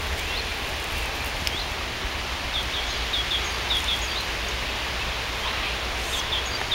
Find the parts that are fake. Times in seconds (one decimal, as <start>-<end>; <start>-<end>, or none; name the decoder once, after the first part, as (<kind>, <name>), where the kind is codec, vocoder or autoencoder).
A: none